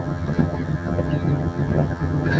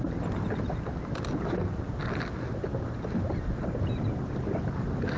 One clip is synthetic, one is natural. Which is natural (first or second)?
second